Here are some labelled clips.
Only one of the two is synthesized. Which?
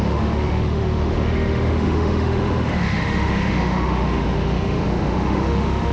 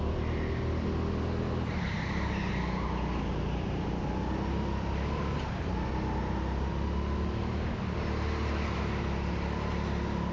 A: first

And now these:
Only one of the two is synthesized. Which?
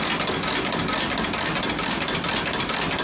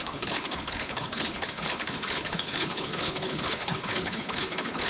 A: second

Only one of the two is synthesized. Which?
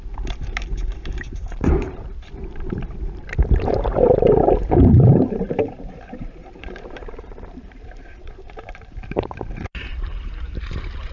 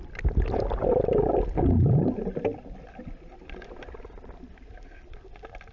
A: first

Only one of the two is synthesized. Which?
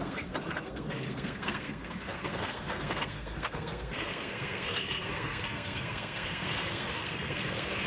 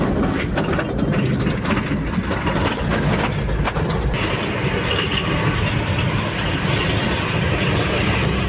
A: first